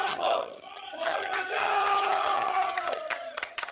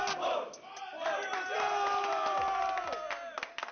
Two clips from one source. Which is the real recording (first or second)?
second